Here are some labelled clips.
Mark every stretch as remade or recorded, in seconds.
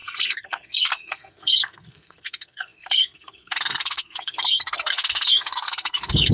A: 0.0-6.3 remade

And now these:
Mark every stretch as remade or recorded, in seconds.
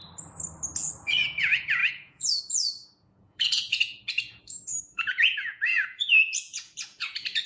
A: 0.0-1.0 recorded; 1.0-7.5 remade